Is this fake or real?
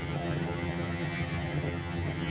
fake